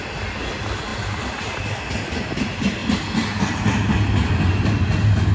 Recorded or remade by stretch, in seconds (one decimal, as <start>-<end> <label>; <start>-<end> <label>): 0.0-5.3 recorded